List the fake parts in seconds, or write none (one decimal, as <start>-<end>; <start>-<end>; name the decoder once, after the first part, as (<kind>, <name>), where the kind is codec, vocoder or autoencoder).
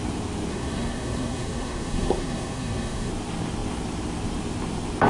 0.5-3.1 (codec, SNAC)